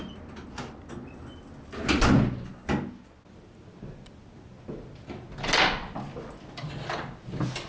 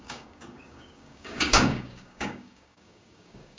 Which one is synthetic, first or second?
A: second